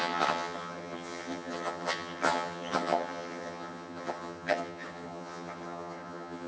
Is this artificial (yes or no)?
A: yes